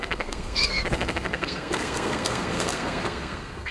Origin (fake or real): fake